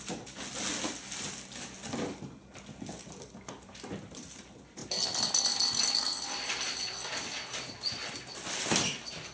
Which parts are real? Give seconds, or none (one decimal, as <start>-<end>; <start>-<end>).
0.0-9.3